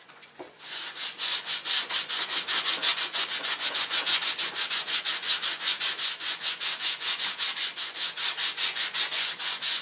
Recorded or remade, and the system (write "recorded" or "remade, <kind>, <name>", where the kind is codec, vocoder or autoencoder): remade, vocoder, Vocos